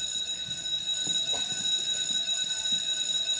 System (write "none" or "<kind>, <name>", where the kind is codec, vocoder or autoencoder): none